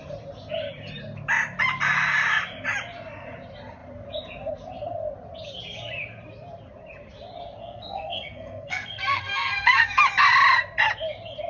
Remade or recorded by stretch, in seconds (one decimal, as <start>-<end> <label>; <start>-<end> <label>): 0.0-7.6 recorded; 7.6-10.0 remade; 10.0-11.5 recorded